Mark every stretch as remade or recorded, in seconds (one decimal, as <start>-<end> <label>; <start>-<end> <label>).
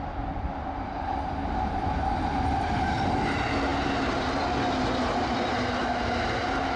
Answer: 0.0-6.8 recorded